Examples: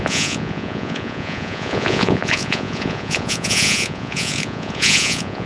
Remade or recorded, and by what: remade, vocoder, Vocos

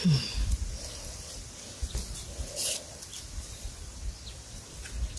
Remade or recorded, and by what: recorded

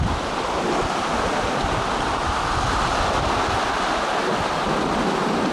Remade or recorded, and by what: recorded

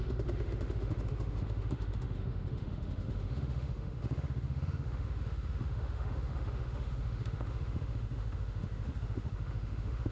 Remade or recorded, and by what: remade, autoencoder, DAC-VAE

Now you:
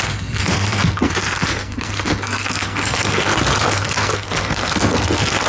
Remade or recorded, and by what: remade, codec, SNAC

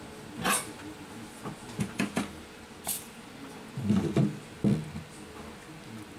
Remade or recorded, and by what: recorded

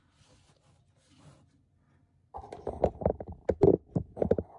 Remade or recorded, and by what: recorded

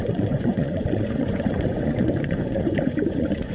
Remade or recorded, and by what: remade, vocoder, Vocos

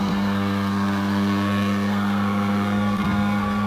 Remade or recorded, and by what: remade, codec, SNAC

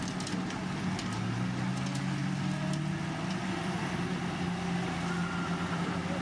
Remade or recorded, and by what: recorded